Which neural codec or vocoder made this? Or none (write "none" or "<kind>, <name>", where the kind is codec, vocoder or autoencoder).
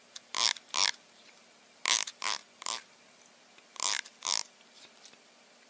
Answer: none